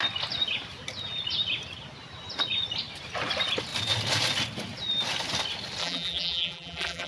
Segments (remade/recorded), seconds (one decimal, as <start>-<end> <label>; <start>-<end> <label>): 0.0-5.8 recorded; 5.8-7.1 remade